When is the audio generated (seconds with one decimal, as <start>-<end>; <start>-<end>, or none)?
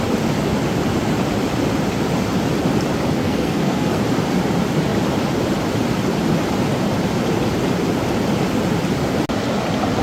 3.2-4.0